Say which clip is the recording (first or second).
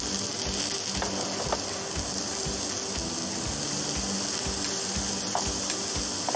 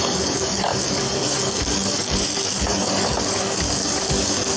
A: first